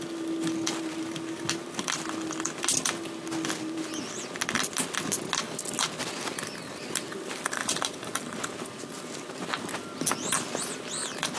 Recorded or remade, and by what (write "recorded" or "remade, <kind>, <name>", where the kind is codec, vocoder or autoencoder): recorded